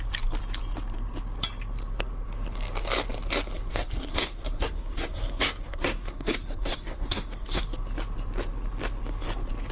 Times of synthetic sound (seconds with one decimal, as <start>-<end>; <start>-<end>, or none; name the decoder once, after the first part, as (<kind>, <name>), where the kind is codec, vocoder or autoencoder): 3.7-7.6 (codec, SNAC)